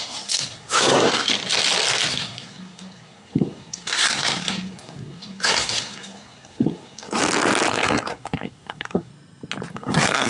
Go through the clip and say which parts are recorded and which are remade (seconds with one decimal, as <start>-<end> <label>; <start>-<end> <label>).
0.0-1.3 remade; 1.3-2.1 recorded; 2.1-7.2 remade; 7.2-7.7 recorded; 7.7-9.1 remade; 9.1-9.7 recorded; 9.7-10.3 remade